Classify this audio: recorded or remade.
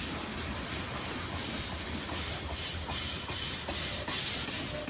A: recorded